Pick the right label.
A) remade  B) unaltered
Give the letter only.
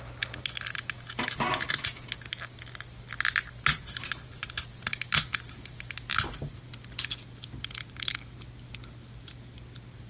B